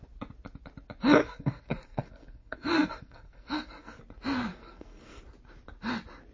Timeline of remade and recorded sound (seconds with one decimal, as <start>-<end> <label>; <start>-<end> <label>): 0.0-1.2 recorded; 1.2-4.0 remade; 4.0-4.5 recorded; 4.5-5.2 remade; 5.2-6.3 recorded

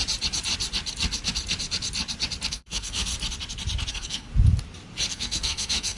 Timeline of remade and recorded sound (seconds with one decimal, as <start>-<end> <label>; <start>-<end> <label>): 0.0-2.5 recorded; 2.5-3.1 remade; 3.1-3.9 recorded; 3.9-4.3 remade; 4.3-5.1 recorded; 5.1-6.0 remade

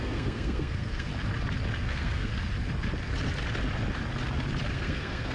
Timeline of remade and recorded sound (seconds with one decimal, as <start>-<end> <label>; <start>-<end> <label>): 0.0-1.1 remade; 1.1-1.8 recorded; 1.8-2.3 remade; 2.3-4.7 recorded; 4.7-5.3 remade

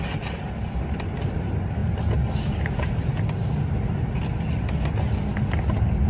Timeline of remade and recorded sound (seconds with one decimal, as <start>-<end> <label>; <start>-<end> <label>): 0.0-6.1 recorded